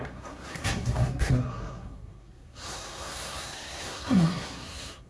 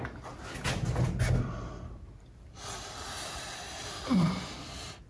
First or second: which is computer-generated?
first